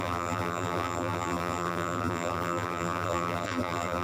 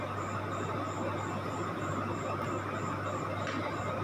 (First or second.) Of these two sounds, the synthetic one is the first